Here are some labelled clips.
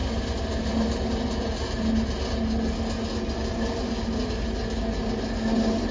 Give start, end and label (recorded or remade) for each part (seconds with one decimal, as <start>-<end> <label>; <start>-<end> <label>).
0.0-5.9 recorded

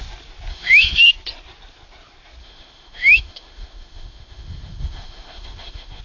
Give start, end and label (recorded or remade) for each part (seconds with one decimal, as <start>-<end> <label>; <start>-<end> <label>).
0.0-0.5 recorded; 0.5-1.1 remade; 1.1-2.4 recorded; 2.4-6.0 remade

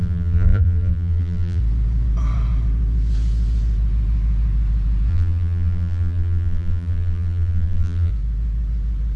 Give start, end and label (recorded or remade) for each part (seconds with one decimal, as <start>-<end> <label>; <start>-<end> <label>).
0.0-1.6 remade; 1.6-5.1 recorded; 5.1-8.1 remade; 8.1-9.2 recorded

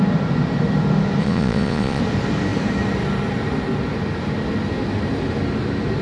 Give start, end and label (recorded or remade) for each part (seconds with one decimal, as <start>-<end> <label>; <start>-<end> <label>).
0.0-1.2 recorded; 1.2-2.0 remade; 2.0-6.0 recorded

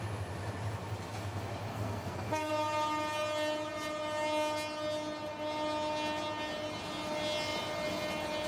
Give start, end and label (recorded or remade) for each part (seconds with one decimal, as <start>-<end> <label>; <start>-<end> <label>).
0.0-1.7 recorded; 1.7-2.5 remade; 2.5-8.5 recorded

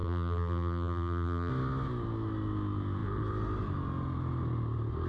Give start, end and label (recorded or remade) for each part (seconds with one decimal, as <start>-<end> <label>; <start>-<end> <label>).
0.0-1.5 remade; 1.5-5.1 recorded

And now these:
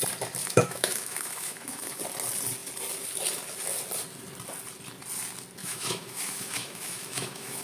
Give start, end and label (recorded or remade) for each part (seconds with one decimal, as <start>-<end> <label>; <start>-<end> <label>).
0.0-0.4 recorded; 0.4-2.0 remade; 2.0-5.6 recorded; 5.6-7.6 remade

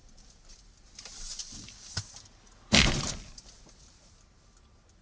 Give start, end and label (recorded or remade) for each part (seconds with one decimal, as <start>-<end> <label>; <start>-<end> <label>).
0.0-1.4 recorded; 1.4-3.1 remade; 3.1-5.0 recorded